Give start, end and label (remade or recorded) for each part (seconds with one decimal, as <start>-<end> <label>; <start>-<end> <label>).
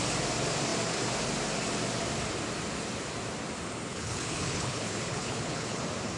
0.0-3.9 recorded; 3.9-5.8 remade; 5.8-6.2 recorded